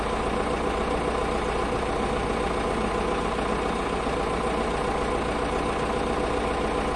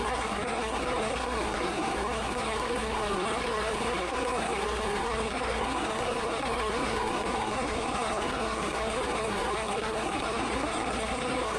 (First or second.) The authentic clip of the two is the first